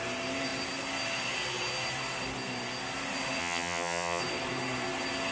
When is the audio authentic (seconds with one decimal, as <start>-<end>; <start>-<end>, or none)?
0.0-3.4; 4.2-5.3